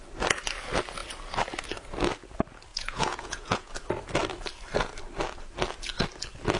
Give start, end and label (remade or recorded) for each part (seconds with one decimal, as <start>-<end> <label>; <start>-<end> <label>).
0.0-2.7 recorded; 2.7-3.7 remade; 3.7-6.6 recorded